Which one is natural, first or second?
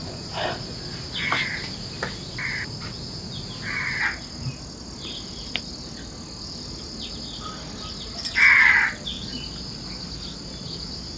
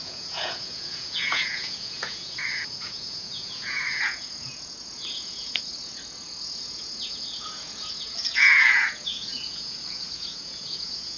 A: first